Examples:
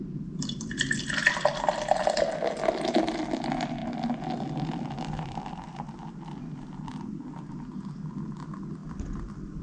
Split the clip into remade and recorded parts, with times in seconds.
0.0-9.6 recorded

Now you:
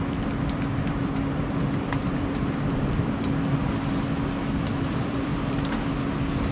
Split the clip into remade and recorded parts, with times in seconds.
0.0-0.7 recorded; 0.7-1.2 remade; 1.2-2.0 recorded; 2.0-3.0 remade; 3.0-4.7 recorded; 4.7-5.9 remade; 5.9-6.5 recorded

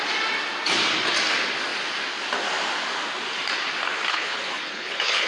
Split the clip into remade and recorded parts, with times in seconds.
0.0-4.1 recorded; 4.1-5.3 remade